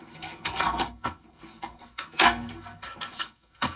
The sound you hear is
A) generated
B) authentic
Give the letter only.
A